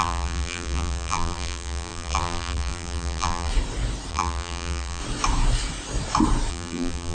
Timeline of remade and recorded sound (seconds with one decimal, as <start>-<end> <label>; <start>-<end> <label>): 0.0-3.5 remade; 3.5-4.1 recorded; 4.1-5.0 remade; 5.0-6.5 recorded; 6.5-7.1 remade